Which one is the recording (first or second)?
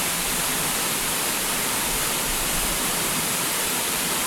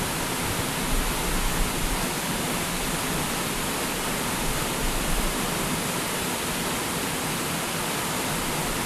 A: second